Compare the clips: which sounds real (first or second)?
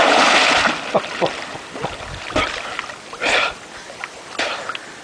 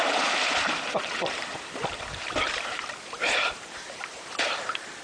first